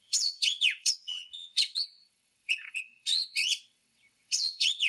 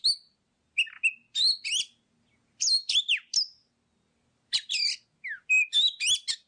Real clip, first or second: second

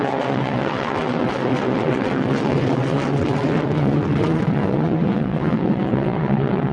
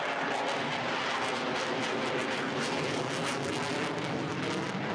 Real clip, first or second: second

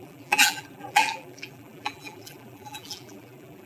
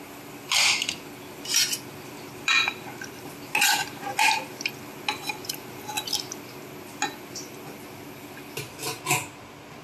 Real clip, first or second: second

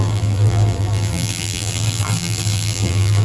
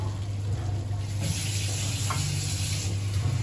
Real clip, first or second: second